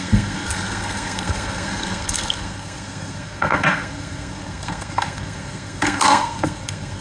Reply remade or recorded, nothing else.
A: remade